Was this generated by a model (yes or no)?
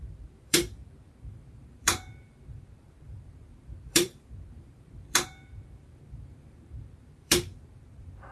yes